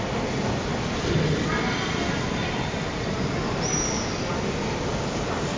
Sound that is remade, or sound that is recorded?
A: recorded